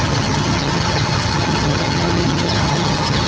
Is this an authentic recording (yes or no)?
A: no